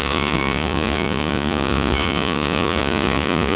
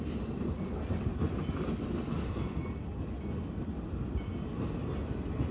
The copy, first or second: first